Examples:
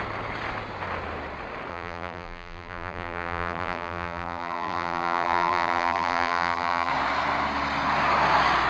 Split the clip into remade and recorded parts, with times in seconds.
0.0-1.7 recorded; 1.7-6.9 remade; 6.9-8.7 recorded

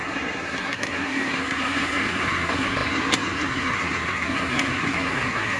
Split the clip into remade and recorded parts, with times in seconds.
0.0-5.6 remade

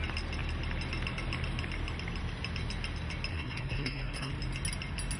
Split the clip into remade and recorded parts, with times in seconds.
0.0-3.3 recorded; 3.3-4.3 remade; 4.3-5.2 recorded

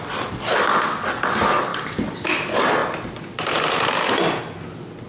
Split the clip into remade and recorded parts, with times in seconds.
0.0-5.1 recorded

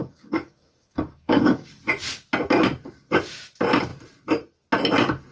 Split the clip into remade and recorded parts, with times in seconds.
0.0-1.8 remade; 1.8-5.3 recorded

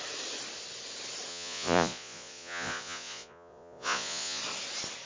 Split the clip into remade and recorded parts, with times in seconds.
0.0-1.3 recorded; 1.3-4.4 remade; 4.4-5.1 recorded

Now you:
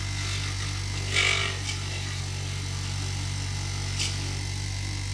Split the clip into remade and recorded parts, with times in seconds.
0.0-1.4 recorded; 1.4-2.2 remade; 2.2-5.1 recorded

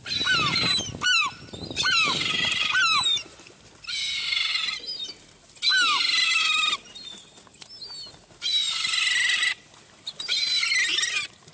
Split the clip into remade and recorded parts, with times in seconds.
0.0-0.5 recorded; 0.5-3.7 remade; 3.7-4.5 recorded; 4.5-5.2 remade; 5.2-11.5 recorded